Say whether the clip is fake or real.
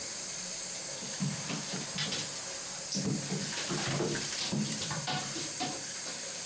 fake